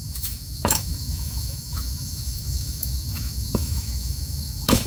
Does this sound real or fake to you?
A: fake